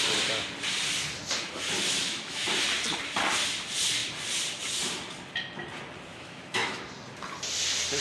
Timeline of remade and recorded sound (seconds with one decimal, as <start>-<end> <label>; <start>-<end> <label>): 0.0-2.0 recorded; 2.0-2.5 remade; 2.5-6.1 recorded; 6.1-6.9 remade; 6.9-8.0 recorded